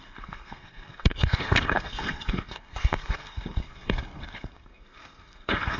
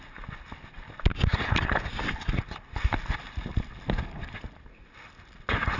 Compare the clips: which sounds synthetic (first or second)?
first